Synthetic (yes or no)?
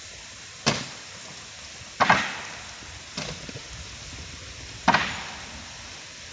no